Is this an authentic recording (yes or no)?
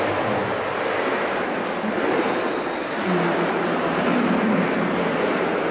no